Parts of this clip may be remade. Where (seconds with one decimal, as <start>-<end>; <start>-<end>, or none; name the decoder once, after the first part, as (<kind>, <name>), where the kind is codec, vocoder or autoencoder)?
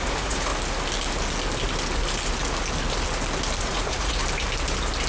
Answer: 0.0-0.5 (vocoder, Vocos); 3.6-4.2